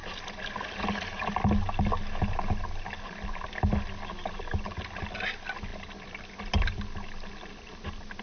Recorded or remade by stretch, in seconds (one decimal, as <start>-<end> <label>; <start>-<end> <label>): 0.0-8.2 recorded